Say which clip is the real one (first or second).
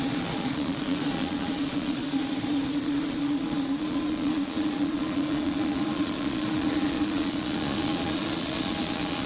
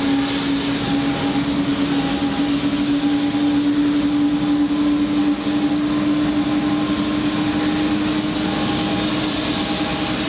second